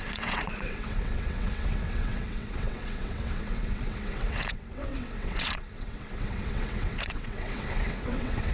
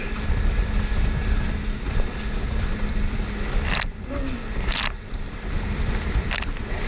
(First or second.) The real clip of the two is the second